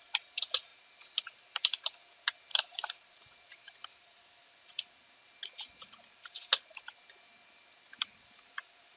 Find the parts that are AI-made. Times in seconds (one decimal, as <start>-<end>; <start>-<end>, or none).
2.5-4.3